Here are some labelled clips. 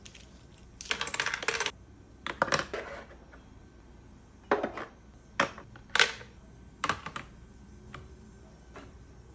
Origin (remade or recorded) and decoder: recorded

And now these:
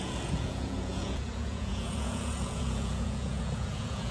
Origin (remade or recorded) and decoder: remade, vocoder, Vocos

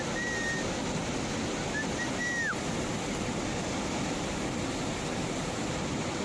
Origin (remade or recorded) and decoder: recorded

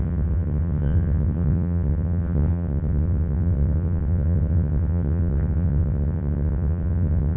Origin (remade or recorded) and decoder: remade, vocoder, WaveNeXt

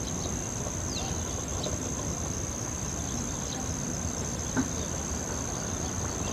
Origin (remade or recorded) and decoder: recorded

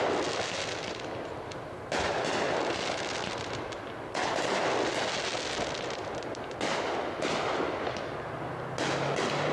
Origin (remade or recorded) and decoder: recorded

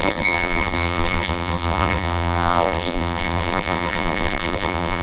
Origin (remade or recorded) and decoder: remade, vocoder, BigVGAN v2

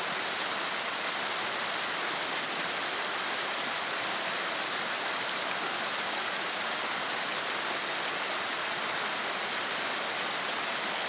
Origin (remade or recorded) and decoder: recorded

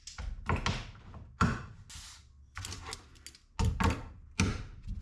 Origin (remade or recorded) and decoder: recorded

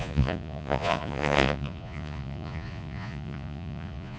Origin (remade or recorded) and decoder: remade, vocoder, Vocos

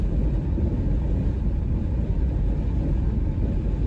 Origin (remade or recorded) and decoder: recorded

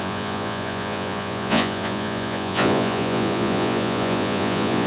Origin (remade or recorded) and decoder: remade, vocoder, Vocos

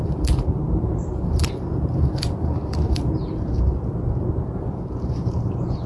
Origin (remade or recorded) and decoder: remade, vocoder, BigVGAN v2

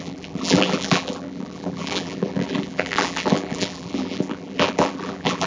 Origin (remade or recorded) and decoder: remade, vocoder, BigVGAN v2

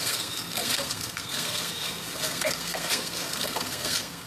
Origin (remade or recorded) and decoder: remade, codec, SNAC